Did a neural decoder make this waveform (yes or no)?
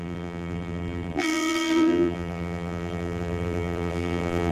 yes